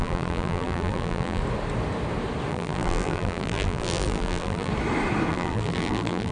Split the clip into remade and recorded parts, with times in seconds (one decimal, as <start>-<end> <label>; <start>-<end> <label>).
0.0-1.4 remade; 1.4-2.5 recorded; 2.5-4.7 remade; 4.7-5.3 recorded; 5.3-6.3 remade